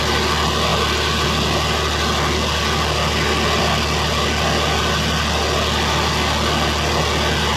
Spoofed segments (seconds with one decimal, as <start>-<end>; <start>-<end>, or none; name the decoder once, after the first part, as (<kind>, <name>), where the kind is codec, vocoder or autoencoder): none